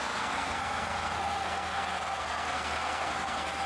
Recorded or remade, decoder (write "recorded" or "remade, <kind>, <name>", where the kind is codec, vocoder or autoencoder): remade, codec, SNAC